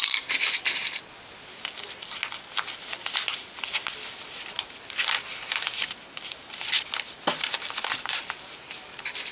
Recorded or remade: recorded